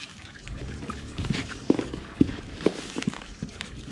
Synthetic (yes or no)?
yes